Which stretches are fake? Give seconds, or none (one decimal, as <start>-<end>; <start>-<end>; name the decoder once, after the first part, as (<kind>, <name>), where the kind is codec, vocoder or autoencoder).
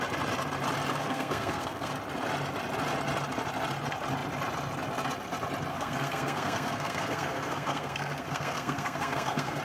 1.0-1.9 (codec, SNAC); 5.7-9.6